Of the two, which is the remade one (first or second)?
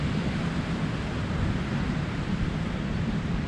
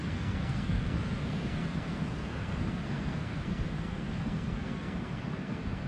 second